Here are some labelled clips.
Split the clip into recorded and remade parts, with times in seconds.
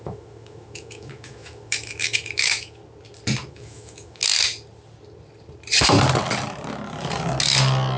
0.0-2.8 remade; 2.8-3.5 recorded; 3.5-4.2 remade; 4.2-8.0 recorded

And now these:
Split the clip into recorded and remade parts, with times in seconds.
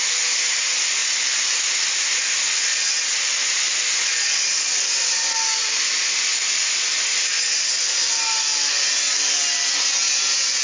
0.0-10.6 recorded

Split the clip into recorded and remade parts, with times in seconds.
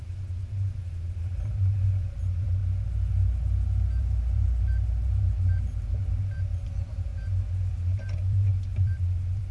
0.0-2.6 remade; 2.6-4.0 recorded; 4.0-7.1 remade; 7.1-7.7 recorded; 7.7-9.5 remade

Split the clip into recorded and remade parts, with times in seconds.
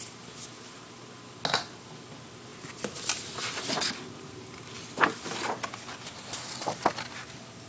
0.0-7.7 recorded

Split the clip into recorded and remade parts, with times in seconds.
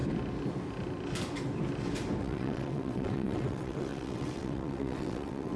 0.0-2.2 recorded; 2.2-5.6 remade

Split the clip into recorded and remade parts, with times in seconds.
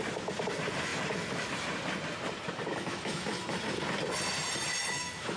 0.0-2.7 recorded; 2.7-3.4 remade; 3.4-4.8 recorded; 4.8-5.4 remade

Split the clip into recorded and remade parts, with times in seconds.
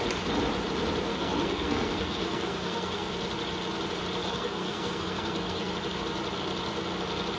0.0-1.1 recorded; 1.1-3.1 remade; 3.1-4.2 recorded; 4.2-5.7 remade; 5.7-7.4 recorded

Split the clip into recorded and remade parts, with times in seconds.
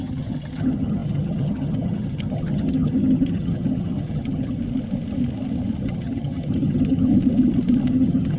0.0-4.6 remade; 4.6-5.8 recorded; 5.8-7.1 remade; 7.1-7.9 recorded; 7.9-8.4 remade